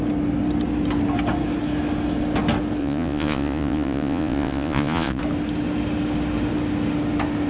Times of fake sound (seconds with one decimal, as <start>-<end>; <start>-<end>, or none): 2.8-5.2